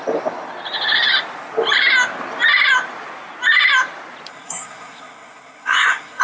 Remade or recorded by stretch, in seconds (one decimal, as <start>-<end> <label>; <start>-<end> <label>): 0.0-4.3 recorded; 4.3-6.2 remade